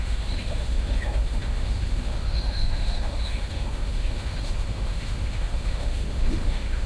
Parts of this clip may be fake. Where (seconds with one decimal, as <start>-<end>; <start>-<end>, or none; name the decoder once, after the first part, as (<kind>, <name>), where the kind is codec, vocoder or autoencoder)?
0.0-6.9 (autoencoder, DAC-VAE)

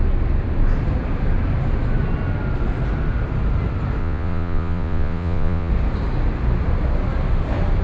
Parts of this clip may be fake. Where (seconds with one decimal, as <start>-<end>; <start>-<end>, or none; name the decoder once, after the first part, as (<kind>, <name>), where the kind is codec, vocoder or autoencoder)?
4.0-5.7 (vocoder, Vocos)

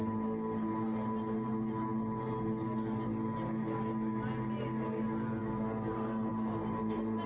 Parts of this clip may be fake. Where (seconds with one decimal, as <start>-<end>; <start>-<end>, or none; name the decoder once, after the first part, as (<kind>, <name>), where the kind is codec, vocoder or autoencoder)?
none

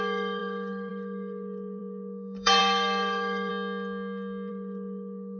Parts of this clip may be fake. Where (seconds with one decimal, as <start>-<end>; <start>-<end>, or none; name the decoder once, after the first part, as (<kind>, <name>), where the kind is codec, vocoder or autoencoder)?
0.0-3.5 (codec, DAC); 4.5-5.4

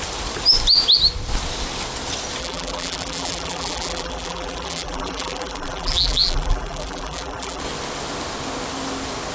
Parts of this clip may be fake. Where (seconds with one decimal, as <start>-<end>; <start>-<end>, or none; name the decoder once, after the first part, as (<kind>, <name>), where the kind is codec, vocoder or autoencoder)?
2.4-7.6 (vocoder, BigVGAN v2)